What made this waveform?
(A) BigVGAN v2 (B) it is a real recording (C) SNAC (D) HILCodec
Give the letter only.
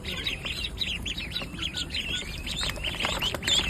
A